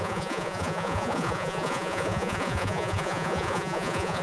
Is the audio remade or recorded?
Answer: remade